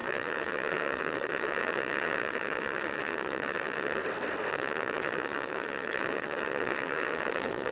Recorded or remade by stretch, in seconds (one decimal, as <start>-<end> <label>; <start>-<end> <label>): 0.0-4.0 remade; 4.0-4.5 recorded; 4.5-7.7 remade